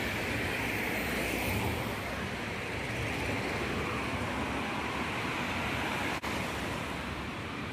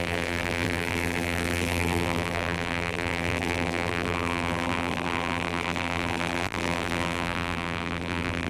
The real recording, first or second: first